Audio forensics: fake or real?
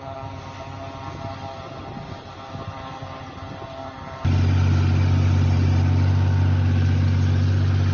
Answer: real